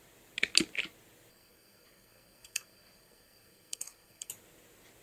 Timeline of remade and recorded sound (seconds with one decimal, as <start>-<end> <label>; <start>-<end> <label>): 0.0-1.3 recorded; 1.3-4.3 remade; 4.3-5.0 recorded